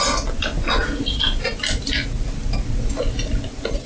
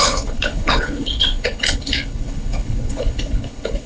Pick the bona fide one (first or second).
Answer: first